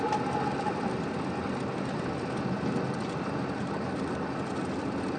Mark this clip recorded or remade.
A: recorded